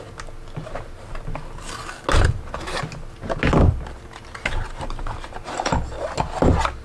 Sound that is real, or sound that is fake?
real